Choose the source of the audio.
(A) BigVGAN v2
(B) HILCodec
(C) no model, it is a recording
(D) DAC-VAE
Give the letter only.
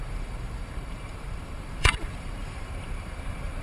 A